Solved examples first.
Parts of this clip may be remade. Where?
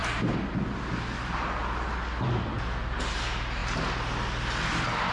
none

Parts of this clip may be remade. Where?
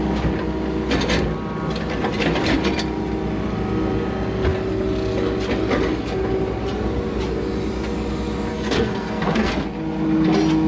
8.5-9.5 (codec, SNAC)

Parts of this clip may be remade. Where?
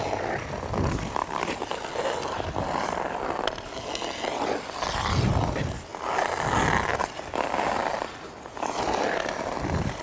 none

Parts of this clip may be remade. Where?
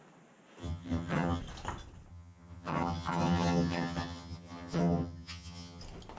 0.6-1.4 (vocoder, HiFi-GAN); 2.1-5.8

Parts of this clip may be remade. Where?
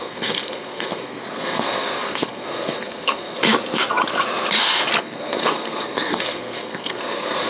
0.0-3.4 (codec, SNAC); 5.0-7.5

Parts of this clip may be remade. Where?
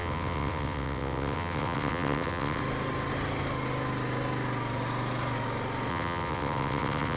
0.0-2.6 (vocoder, WaveNeXt); 5.9-7.2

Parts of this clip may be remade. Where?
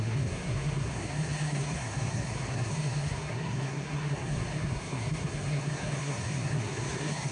0.0-7.3 (codec, SNAC)